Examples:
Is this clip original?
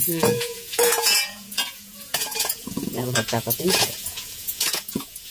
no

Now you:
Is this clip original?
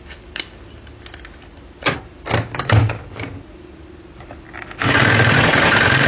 yes